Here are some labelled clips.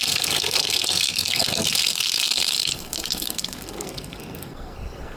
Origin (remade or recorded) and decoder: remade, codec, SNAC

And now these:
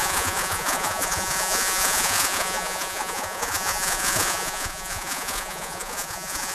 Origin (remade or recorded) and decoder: remade, vocoder, Vocos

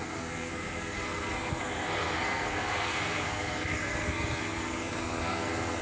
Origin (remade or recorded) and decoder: remade, codec, SNAC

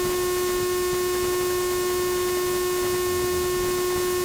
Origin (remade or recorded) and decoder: recorded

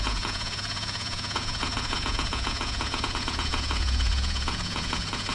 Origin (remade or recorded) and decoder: remade, vocoder, Vocos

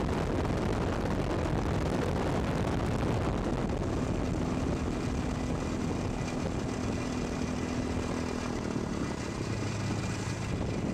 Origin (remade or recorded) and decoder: recorded